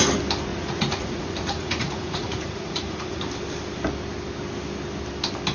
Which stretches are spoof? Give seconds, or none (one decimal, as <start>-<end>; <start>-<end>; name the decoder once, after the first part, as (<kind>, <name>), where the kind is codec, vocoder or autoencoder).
0.5-3.2 (vocoder, Vocos)